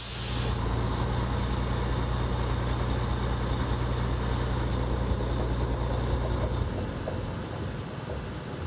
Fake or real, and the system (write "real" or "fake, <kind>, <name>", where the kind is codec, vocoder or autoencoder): real